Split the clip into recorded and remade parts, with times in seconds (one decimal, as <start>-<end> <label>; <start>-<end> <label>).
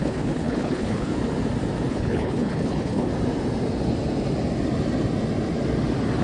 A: 0.0-1.1 remade; 1.1-1.9 recorded; 1.9-3.1 remade; 3.1-6.2 recorded